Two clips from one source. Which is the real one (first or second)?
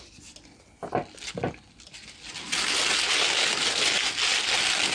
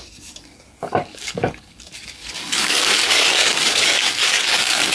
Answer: first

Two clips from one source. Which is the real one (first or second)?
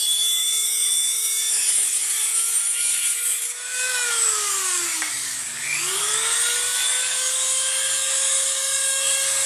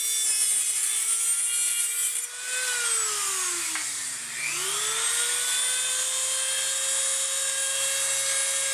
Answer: second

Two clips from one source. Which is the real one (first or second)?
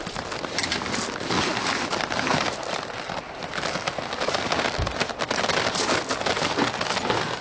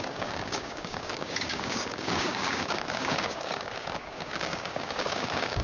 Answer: first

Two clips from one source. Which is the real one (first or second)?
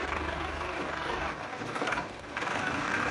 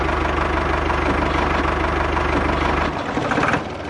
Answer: second